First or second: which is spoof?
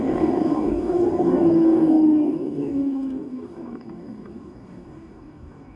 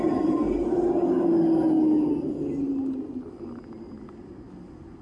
first